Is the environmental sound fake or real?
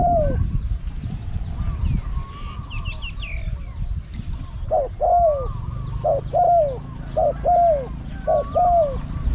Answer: real